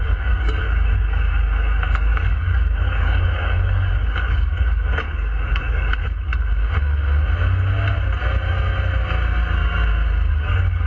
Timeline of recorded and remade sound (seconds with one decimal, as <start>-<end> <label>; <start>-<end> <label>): 0.0-6.3 remade; 6.3-10.3 recorded; 10.3-10.9 remade